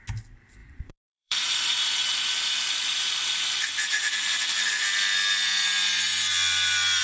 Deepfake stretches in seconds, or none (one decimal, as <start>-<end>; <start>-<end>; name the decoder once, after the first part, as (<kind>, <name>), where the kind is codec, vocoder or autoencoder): 0.6-4.8 (vocoder, BigVGAN v2)